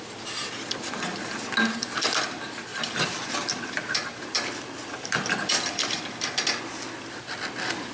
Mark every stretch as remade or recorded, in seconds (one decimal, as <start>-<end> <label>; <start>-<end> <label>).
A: 0.0-2.7 recorded; 2.7-6.6 remade; 6.6-7.9 recorded